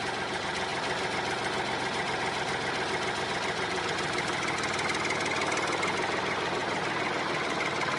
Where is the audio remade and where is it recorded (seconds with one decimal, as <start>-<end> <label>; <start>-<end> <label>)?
0.0-8.0 recorded